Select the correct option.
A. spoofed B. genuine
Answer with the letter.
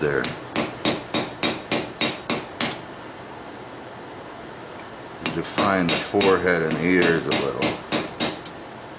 B